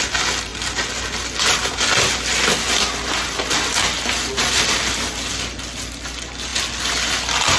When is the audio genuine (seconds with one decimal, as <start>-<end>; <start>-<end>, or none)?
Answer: 0.0-7.6